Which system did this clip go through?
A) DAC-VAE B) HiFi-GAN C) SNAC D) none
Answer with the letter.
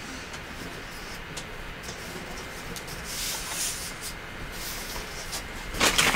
D